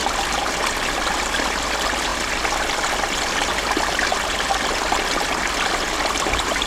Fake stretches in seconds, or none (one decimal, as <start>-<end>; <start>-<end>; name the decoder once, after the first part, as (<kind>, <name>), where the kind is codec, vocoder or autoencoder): none